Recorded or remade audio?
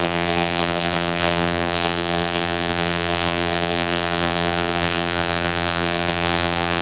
remade